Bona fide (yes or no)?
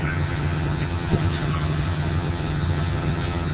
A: no